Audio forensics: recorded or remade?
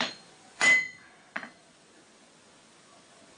remade